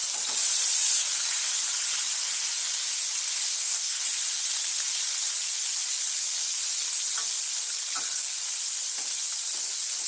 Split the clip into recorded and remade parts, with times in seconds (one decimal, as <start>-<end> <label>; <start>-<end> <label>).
0.0-3.5 recorded; 3.5-4.0 remade; 4.0-10.1 recorded